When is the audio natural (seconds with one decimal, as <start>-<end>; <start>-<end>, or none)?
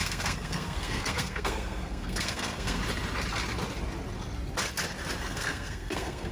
2.8-5.2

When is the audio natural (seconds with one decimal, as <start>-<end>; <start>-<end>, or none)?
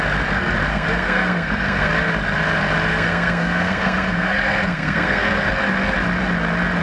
0.0-0.7; 1.9-2.9; 5.5-6.8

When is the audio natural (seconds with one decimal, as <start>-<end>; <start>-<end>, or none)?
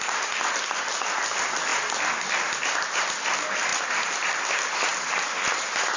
0.0-6.0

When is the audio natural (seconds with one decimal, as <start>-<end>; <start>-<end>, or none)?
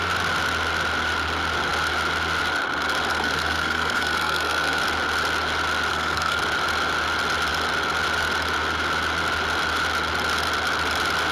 0.0-3.1; 4.8-5.9; 6.4-11.3